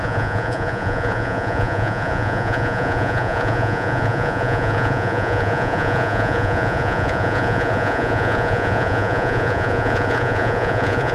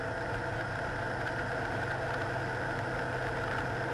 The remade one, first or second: first